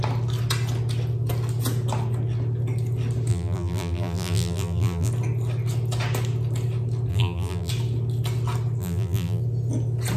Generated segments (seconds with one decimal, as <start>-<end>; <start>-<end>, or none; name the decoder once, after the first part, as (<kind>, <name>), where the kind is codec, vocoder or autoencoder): 3.3-5.1 (vocoder, BigVGAN v2); 7.1-7.7; 8.8-9.4

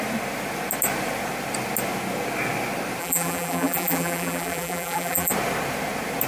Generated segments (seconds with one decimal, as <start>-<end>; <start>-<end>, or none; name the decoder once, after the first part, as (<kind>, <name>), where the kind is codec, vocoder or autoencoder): 3.0-5.3 (vocoder, BigVGAN v2)